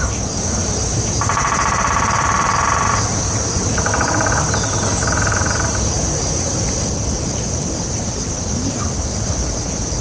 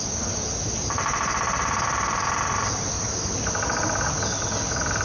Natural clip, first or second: second